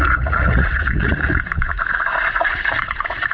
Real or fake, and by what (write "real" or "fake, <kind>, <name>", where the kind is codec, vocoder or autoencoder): fake, vocoder, Vocos